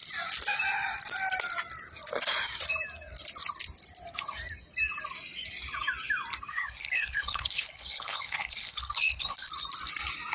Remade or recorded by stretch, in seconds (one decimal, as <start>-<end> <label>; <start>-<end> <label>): 0.0-6.5 recorded; 6.5-9.5 remade; 9.5-10.3 recorded